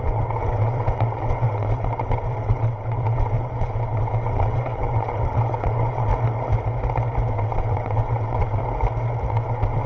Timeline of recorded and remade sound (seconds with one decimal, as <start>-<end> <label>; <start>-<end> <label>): 0.0-6.1 remade; 6.1-7.3 recorded; 7.3-8.6 remade; 8.6-9.3 recorded; 9.3-9.9 remade